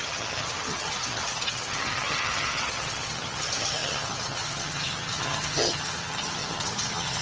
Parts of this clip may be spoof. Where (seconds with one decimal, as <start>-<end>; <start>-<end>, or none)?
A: 0.0-7.2